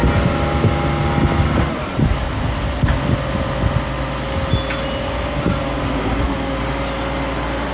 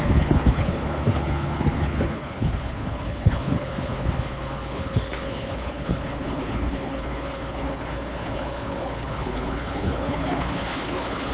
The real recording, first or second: first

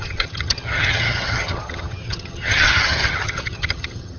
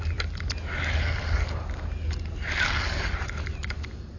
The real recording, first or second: second